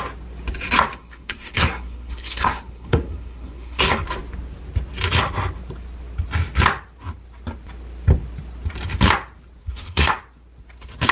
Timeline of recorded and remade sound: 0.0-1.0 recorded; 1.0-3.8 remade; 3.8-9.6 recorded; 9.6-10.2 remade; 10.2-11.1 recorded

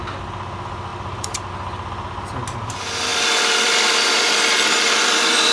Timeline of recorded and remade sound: 0.0-0.9 recorded; 0.9-1.5 remade; 1.5-3.1 recorded; 3.1-5.5 remade

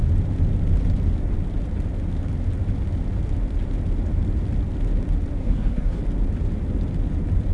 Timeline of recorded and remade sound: 0.0-5.4 recorded; 5.4-6.0 remade; 6.0-7.5 recorded

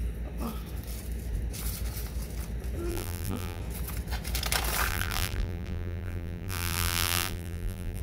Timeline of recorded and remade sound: 0.0-2.9 recorded; 2.9-3.6 remade; 3.6-4.9 recorded; 4.9-8.0 remade

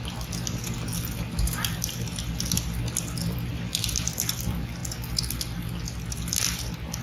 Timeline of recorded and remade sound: 0.0-7.0 recorded

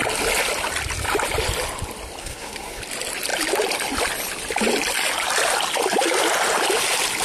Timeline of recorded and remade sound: 0.0-2.2 recorded; 2.2-2.8 remade; 2.8-7.2 recorded

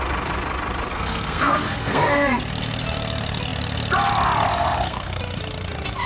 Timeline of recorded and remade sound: 0.0-0.9 recorded; 0.9-2.5 remade; 2.5-4.5 recorded; 4.5-5.2 remade; 5.2-6.1 recorded